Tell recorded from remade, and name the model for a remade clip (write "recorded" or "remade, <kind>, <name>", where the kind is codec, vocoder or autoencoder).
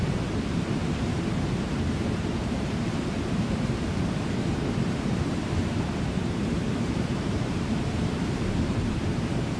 remade, vocoder, BigVGAN v2